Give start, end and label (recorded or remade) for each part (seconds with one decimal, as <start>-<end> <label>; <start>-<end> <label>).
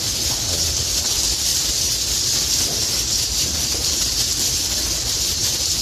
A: 0.0-5.8 recorded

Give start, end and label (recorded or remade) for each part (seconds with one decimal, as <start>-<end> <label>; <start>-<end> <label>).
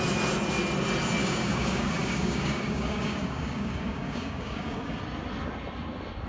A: 0.0-1.2 recorded; 1.2-5.0 remade; 5.0-6.3 recorded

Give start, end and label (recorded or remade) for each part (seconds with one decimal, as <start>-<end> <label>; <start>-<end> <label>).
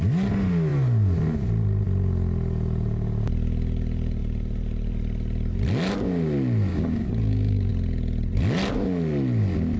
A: 0.0-6.7 recorded; 6.7-7.7 remade; 7.7-9.8 recorded